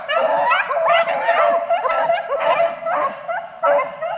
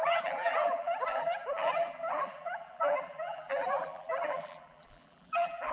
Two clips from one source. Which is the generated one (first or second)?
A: second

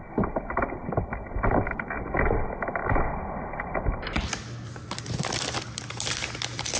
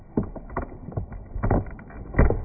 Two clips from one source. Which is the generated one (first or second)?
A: first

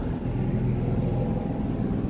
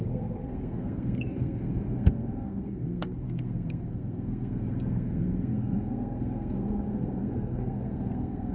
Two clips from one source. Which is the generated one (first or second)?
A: second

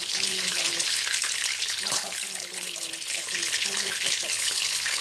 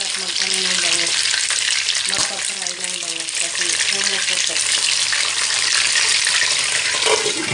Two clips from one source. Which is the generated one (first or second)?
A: first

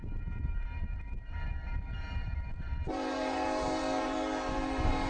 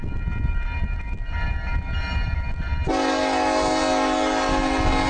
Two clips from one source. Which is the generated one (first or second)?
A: first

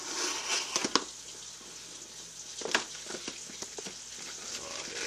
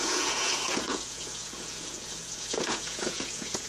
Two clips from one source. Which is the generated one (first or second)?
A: second